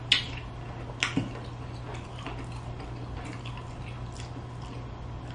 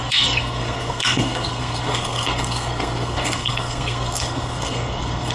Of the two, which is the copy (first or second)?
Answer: second